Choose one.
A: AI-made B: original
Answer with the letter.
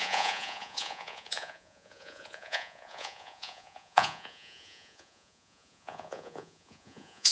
A